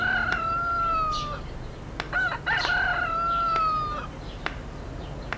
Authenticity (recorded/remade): recorded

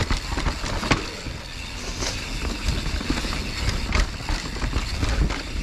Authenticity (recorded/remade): recorded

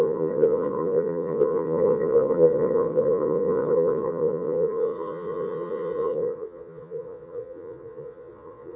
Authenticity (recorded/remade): remade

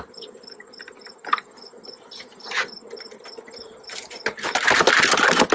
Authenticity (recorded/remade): recorded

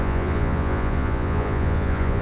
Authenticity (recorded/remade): remade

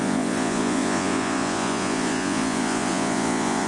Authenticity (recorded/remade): remade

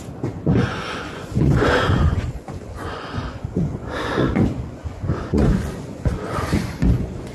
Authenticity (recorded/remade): remade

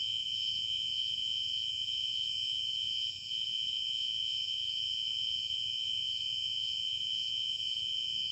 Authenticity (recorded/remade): remade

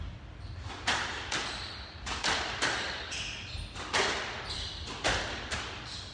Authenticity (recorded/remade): recorded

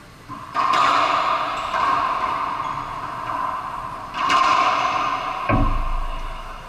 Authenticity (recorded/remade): recorded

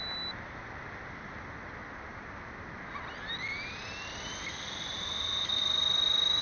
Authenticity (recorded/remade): recorded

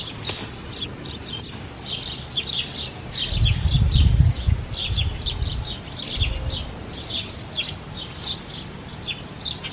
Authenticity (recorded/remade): recorded